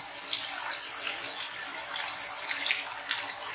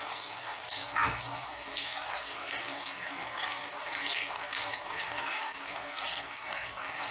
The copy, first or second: second